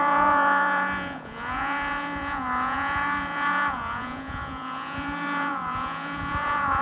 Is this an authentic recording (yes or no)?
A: no